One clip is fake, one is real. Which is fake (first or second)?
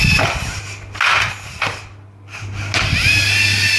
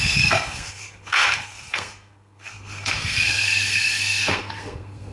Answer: second